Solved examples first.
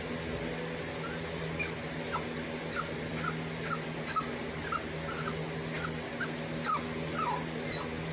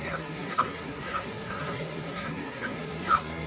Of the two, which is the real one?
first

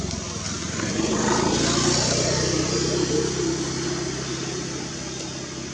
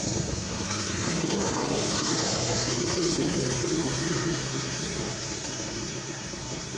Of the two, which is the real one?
first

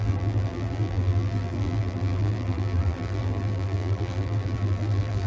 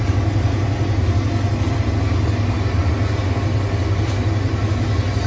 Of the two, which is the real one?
second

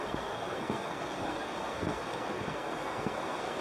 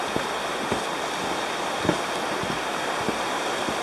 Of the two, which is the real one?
second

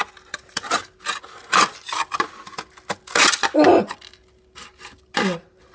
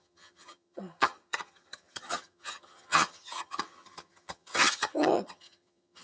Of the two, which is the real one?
first